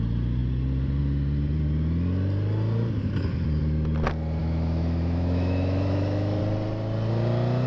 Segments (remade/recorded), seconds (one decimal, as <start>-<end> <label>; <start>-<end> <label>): 0.0-4.4 recorded; 4.4-6.4 remade; 6.4-7.7 recorded